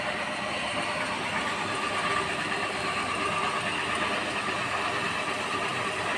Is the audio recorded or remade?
recorded